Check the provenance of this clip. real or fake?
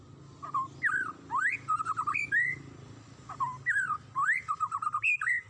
real